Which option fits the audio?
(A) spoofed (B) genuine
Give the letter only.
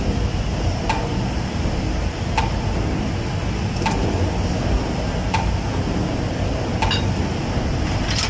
B